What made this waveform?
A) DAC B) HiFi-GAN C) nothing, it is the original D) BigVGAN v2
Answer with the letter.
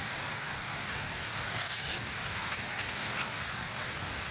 A